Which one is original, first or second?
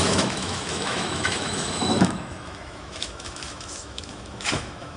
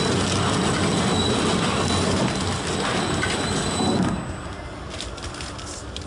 second